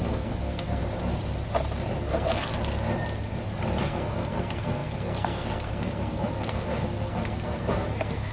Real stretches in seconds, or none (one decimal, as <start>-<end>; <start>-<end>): 0.8-2.0; 2.5-3.8